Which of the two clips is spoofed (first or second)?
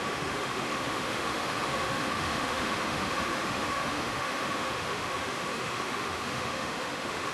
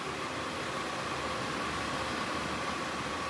first